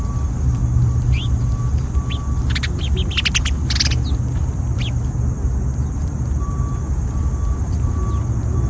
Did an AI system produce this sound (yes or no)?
no